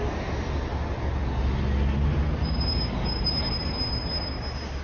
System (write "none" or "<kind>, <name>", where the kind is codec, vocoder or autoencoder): none